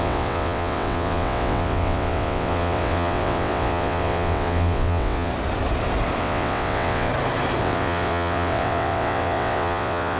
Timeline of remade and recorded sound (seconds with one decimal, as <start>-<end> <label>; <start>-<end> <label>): 0.0-5.3 remade; 5.3-6.2 recorded; 6.2-7.1 remade; 7.1-7.6 recorded; 7.6-10.2 remade